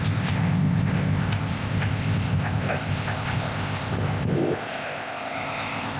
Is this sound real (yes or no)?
no